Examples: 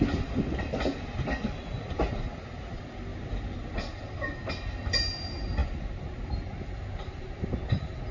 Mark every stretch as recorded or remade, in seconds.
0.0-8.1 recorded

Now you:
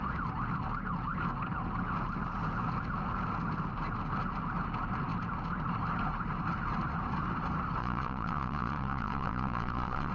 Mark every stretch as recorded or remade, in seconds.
0.0-7.8 recorded; 7.8-10.1 remade

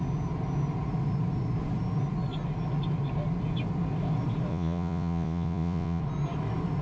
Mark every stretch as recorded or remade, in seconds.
0.0-4.5 recorded; 4.5-6.0 remade; 6.0-6.8 recorded